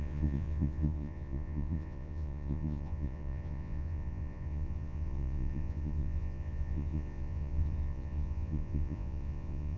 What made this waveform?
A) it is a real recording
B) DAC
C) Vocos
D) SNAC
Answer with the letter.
C